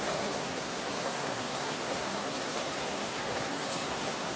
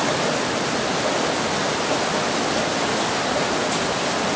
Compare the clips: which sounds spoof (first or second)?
first